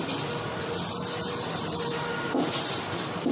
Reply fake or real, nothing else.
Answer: real